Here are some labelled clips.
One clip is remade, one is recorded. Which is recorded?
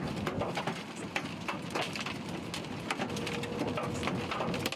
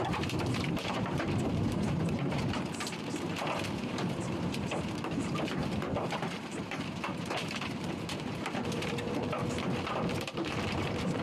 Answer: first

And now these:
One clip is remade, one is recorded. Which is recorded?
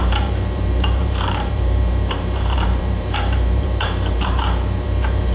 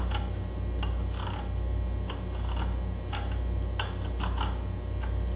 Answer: second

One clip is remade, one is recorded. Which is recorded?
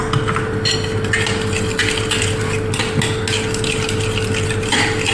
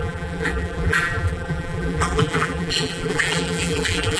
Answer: first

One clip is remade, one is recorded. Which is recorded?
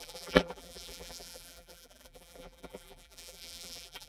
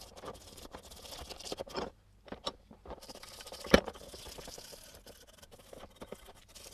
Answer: second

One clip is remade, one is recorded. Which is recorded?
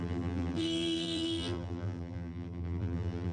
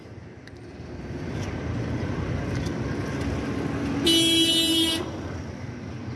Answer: second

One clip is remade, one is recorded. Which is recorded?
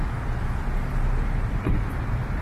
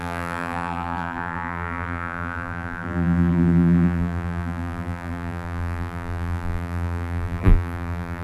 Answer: first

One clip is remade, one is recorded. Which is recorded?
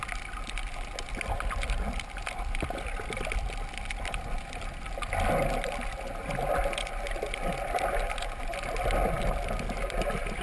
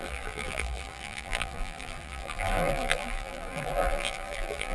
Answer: first